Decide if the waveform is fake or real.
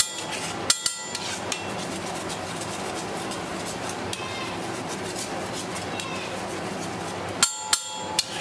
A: real